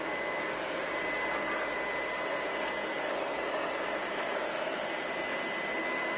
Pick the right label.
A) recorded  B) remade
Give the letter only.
A